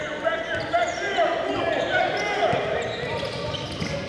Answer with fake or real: real